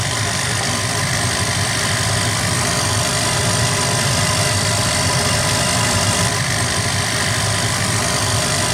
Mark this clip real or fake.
fake